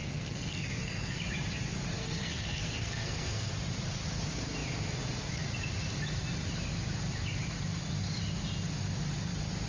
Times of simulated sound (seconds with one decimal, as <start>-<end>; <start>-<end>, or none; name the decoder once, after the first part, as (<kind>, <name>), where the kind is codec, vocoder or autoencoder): 0.0-1.2 (codec, SNAC); 2.0-3.5